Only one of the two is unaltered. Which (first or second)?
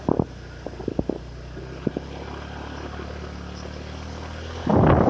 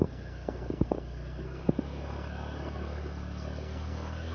first